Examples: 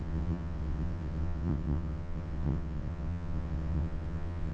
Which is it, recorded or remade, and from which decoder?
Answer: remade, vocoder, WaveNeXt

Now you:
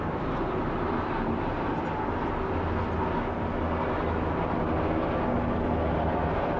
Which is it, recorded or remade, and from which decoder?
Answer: recorded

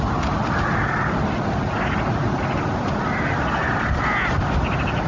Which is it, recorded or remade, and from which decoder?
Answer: recorded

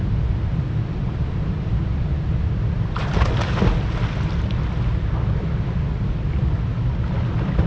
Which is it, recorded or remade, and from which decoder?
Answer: recorded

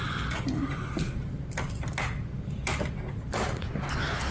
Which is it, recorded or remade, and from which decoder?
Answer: recorded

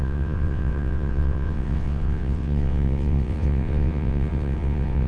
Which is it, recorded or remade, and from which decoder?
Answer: remade, vocoder, WaveNeXt